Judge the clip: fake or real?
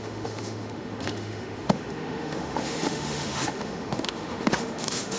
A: fake